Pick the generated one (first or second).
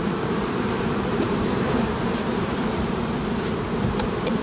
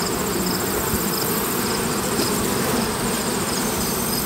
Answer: first